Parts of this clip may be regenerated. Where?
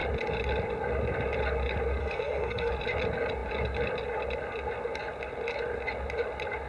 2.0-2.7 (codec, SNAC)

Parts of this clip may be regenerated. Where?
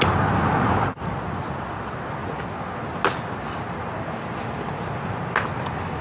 none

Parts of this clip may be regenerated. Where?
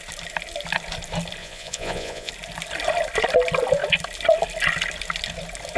1.4-2.3 (vocoder, Vocos)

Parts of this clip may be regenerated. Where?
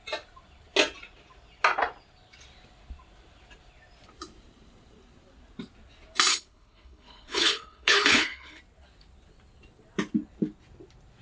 6.3-8.6 (codec, HILCodec)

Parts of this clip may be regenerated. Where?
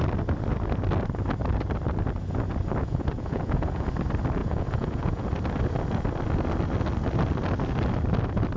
2.8-3.9 (vocoder, Vocos); 4.4-5.2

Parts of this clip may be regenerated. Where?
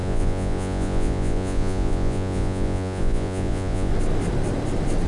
0.0-3.9 (vocoder, Vocos)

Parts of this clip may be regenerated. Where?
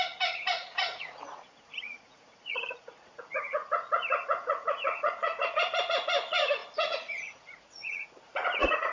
0.0-8.9 (vocoder, Vocos)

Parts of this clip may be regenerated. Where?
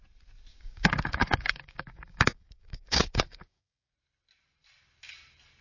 0.5-3.9 (codec, DAC)